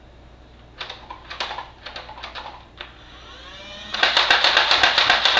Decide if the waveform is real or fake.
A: real